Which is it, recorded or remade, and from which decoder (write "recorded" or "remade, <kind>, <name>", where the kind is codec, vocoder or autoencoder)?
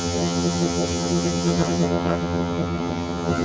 remade, vocoder, HiFi-GAN